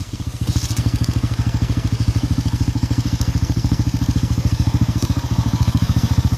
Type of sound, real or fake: fake